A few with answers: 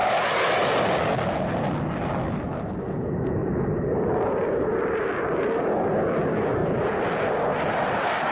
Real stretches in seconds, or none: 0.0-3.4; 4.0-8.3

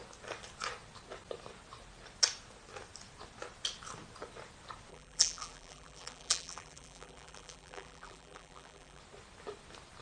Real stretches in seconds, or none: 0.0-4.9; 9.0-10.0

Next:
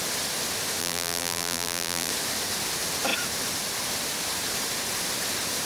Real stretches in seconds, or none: 0.0-0.8; 2.1-5.7